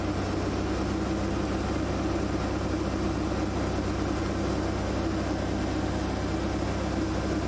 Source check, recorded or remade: recorded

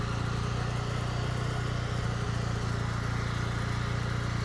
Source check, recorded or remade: recorded